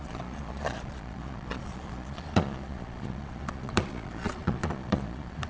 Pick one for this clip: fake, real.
fake